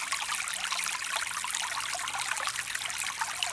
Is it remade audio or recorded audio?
recorded